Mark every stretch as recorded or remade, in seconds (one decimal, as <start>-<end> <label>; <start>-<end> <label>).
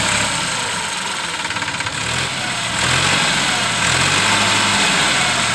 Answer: 0.0-5.5 recorded